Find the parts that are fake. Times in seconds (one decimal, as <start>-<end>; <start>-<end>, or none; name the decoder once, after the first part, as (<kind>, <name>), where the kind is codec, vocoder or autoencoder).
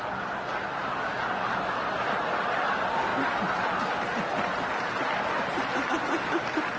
none